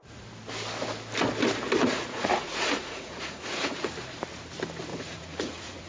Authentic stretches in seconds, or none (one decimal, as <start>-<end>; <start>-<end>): 0.0-1.8; 3.9-4.9